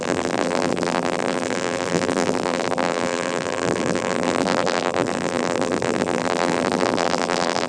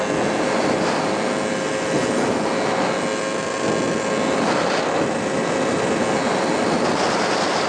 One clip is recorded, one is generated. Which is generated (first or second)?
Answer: first